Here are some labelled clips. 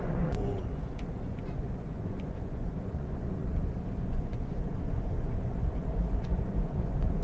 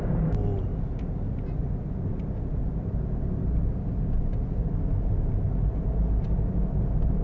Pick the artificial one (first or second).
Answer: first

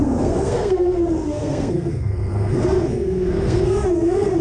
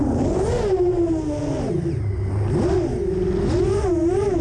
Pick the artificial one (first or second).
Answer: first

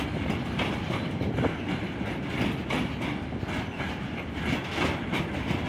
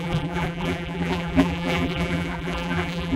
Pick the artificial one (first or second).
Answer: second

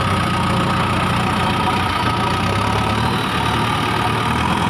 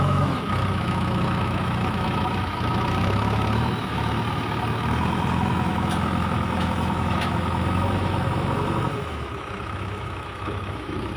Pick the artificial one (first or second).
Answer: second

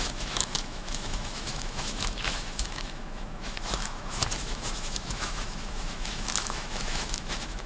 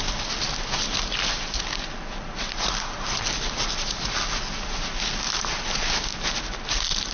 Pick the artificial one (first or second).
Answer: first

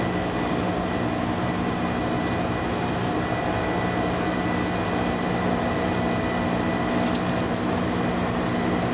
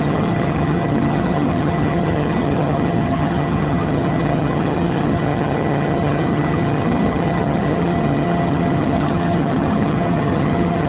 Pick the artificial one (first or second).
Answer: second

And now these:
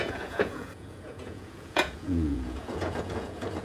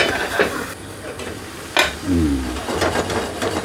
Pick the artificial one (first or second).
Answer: first